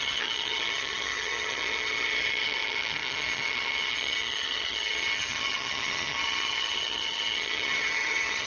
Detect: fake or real fake